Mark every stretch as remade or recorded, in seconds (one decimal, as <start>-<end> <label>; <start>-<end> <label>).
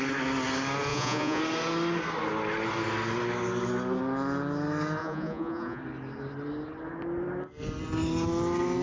0.0-0.9 recorded; 0.9-1.4 remade; 1.4-5.0 recorded; 5.0-5.8 remade; 5.8-8.8 recorded